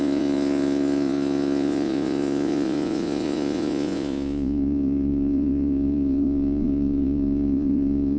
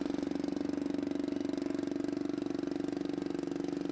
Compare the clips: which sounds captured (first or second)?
second